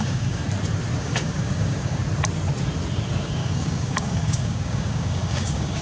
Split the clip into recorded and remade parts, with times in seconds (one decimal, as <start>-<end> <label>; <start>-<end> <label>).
0.0-0.4 remade; 0.4-1.0 recorded; 1.0-2.0 remade; 2.0-3.2 recorded; 3.2-5.8 remade